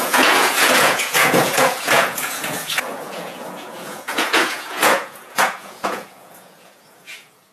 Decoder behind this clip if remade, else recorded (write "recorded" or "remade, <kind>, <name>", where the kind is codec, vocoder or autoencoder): remade, vocoder, Vocos